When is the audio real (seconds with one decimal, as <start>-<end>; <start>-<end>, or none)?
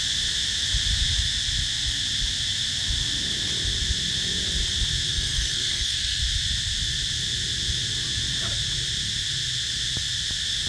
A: 0.0-5.1; 6.2-10.7